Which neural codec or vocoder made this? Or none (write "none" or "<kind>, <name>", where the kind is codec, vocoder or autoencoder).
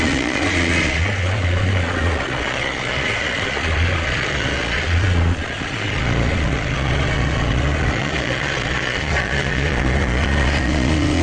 vocoder, Vocos